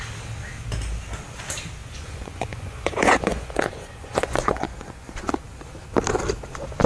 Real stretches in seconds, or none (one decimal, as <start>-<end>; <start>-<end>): 0.0-1.8; 5.4-6.9